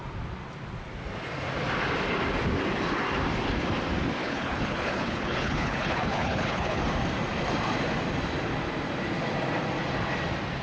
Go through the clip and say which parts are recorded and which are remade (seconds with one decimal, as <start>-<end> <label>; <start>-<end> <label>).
0.0-4.2 recorded; 4.2-6.8 remade; 6.8-10.6 recorded